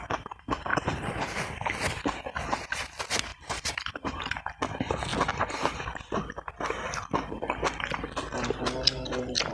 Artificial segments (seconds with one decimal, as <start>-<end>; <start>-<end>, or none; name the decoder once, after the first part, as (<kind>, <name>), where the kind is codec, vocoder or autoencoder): 0.7-2.9 (vocoder, BigVGAN v2); 3.3-4.1